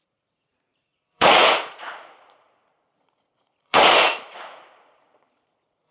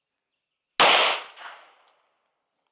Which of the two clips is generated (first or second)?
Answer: first